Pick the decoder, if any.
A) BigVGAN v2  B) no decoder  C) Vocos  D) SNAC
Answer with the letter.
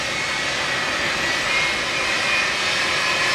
B